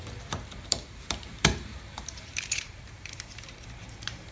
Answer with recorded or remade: remade